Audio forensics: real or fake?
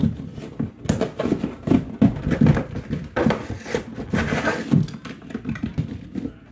real